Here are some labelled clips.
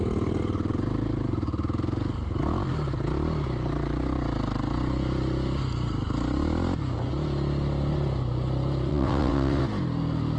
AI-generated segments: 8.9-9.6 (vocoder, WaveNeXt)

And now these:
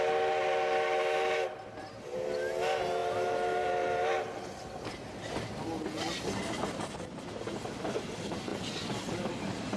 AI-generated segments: none

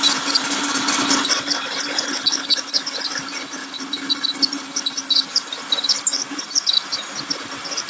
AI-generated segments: none

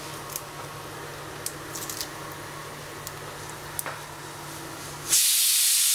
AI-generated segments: none